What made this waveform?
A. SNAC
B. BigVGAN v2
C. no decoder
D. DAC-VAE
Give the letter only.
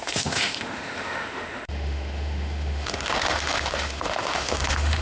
D